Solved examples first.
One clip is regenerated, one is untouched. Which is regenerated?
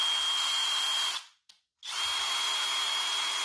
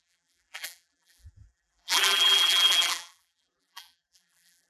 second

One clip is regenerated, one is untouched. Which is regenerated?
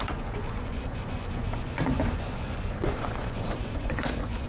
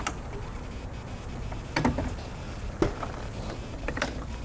first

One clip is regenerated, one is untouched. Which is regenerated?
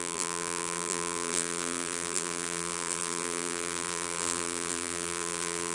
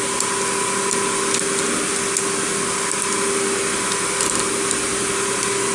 first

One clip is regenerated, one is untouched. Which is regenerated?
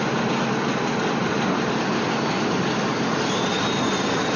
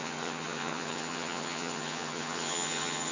second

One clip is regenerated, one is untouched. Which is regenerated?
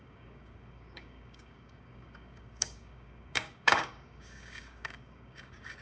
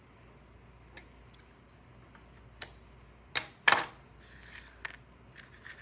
first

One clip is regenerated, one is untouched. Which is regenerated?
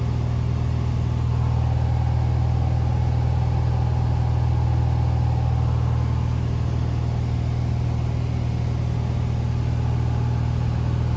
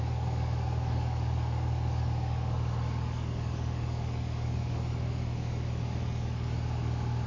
second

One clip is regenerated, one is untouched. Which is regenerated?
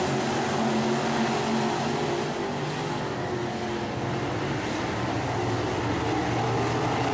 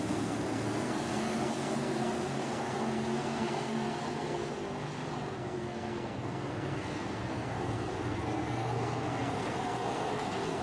second